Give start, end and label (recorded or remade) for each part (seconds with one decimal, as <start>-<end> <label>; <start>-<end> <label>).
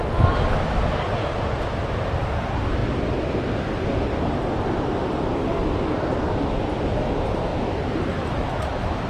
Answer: 0.0-9.1 recorded